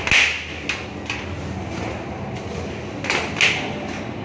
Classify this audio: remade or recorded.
recorded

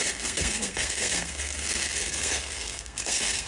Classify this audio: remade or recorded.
remade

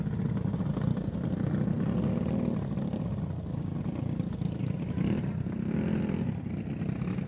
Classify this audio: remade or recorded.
recorded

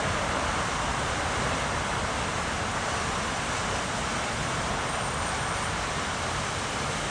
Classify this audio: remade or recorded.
recorded